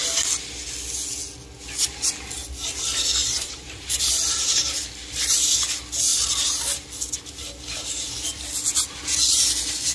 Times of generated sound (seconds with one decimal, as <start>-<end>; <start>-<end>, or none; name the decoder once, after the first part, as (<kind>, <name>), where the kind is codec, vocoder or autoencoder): 3.2-4.1 (vocoder, BigVGAN v2)